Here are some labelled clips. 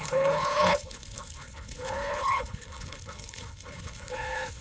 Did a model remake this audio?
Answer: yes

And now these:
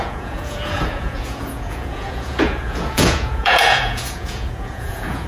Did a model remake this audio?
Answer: yes